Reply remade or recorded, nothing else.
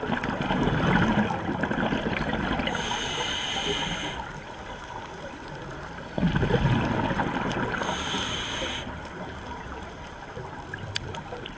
recorded